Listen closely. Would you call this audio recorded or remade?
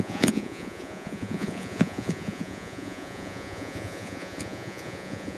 remade